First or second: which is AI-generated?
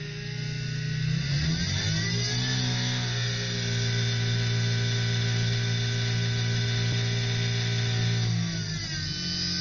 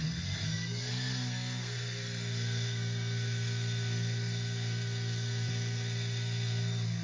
second